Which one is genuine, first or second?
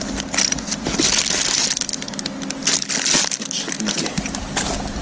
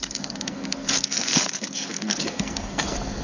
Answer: first